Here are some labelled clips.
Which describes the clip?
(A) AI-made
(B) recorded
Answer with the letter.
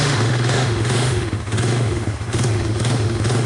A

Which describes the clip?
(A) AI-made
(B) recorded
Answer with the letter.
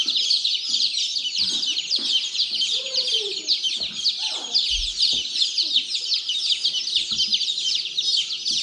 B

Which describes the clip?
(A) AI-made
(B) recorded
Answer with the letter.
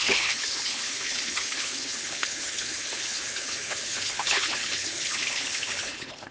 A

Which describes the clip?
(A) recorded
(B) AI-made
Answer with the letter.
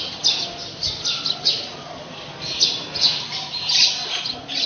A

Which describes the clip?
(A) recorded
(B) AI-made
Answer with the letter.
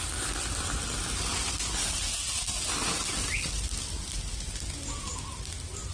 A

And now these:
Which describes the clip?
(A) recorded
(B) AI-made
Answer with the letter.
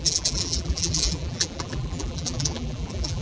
B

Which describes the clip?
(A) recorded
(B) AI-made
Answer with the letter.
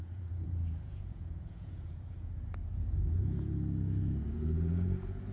B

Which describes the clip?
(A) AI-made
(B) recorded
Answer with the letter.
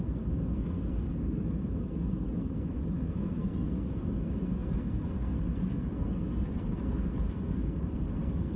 A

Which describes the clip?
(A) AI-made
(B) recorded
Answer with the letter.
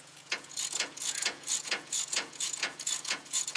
A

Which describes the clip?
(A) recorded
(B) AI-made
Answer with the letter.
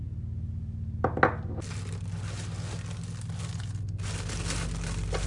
A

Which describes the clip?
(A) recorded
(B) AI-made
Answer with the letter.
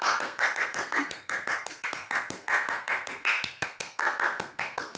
B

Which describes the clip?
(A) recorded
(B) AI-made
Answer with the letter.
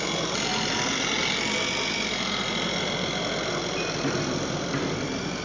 A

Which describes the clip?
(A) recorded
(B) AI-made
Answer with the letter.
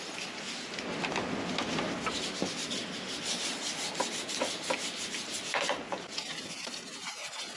A